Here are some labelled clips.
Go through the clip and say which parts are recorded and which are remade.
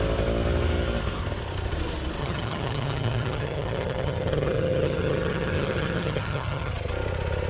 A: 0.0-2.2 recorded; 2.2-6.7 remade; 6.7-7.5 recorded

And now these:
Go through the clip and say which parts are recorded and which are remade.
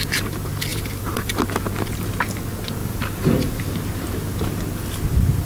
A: 0.0-0.7 recorded; 0.7-1.4 remade; 1.4-2.8 recorded; 2.8-3.6 remade; 3.6-5.5 recorded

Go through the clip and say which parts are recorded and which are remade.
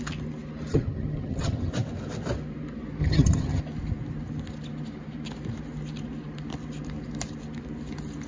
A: 0.0-0.7 recorded; 0.7-1.7 remade; 1.7-3.0 recorded; 3.0-3.6 remade; 3.6-8.3 recorded